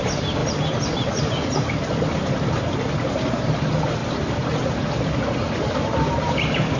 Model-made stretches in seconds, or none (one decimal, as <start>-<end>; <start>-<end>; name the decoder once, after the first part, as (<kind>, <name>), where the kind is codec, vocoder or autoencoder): none